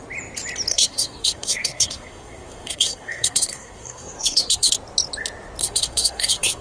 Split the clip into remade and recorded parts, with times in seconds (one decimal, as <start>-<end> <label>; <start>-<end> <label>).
0.0-0.7 recorded; 0.7-4.7 remade; 4.7-5.6 recorded; 5.6-6.6 remade

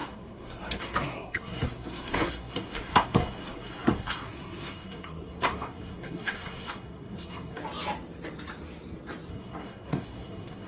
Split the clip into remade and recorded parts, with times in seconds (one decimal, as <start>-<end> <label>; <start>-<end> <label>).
0.0-7.6 remade; 7.6-9.3 recorded; 9.3-10.7 remade

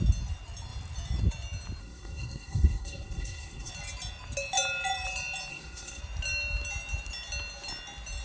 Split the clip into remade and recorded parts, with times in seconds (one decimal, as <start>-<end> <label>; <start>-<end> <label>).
0.0-1.8 recorded; 1.8-3.7 remade; 3.7-5.5 recorded; 5.5-6.0 remade; 6.0-8.2 recorded

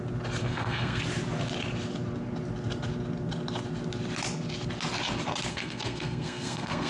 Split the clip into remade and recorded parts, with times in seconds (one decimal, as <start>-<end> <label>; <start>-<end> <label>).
0.0-0.4 recorded; 0.4-1.0 remade; 1.0-5.5 recorded; 5.5-6.9 remade

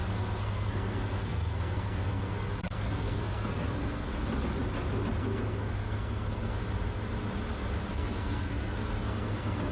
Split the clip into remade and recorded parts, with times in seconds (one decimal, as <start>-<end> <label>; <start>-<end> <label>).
0.0-4.1 remade; 4.1-5.2 recorded; 5.2-6.6 remade; 6.6-7.9 recorded; 7.9-9.7 remade

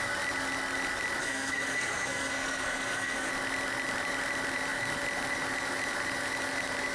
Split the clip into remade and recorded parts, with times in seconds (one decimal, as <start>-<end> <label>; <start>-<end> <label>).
0.0-1.2 recorded; 1.2-3.3 remade; 3.3-6.9 recorded